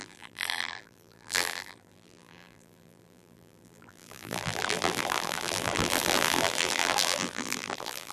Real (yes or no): no